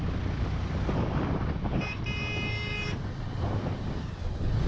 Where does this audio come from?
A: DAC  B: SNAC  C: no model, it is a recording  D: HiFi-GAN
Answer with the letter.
C